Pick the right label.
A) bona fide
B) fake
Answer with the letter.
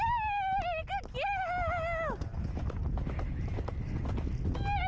A